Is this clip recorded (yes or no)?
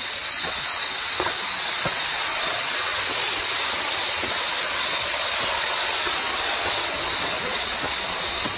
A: no